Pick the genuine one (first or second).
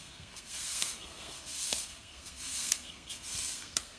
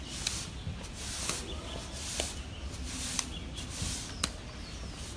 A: second